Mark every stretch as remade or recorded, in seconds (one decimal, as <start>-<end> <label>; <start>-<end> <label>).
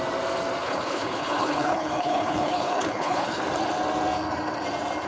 0.0-0.6 recorded; 0.6-3.4 remade; 3.4-5.1 recorded